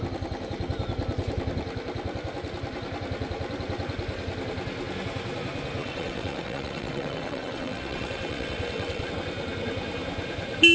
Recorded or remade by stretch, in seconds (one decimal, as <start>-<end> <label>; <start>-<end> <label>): 0.0-5.8 recorded; 5.8-9.1 remade; 9.1-10.7 recorded